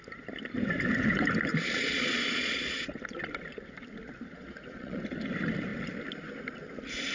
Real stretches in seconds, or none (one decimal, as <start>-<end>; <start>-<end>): 0.0-1.5; 2.9-4.3; 5.0-7.1